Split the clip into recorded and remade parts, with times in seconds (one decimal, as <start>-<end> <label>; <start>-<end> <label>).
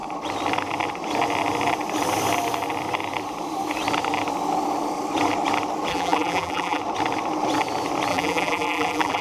0.0-5.9 recorded; 5.9-6.8 remade; 6.8-8.1 recorded; 8.1-9.2 remade